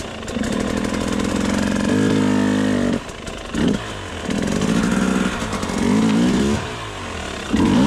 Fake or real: real